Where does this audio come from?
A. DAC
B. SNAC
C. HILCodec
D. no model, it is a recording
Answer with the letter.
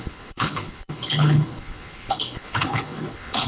C